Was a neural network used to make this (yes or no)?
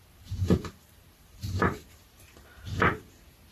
yes